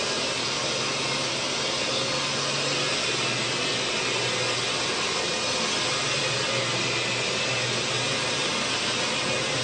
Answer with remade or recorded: recorded